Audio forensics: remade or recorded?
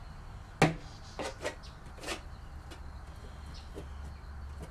recorded